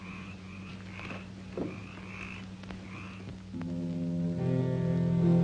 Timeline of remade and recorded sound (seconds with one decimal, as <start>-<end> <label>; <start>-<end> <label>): 0.0-0.7 remade; 0.7-5.4 recorded